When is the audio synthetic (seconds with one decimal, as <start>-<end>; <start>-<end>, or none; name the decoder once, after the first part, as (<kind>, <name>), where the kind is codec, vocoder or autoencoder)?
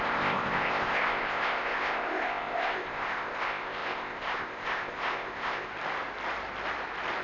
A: 0.0-5.7 (codec, ZipCodec)